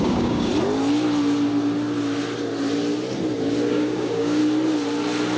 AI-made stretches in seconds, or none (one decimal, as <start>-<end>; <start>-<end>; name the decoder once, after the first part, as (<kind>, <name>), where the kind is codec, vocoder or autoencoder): 0.0-0.5 (codec, DAC); 3.7-4.4